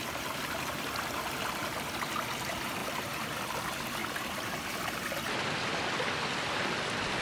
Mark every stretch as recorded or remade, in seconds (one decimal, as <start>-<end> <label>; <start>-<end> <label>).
0.0-2.8 recorded; 2.8-3.4 remade; 3.4-4.0 recorded; 4.0-4.8 remade; 4.8-7.2 recorded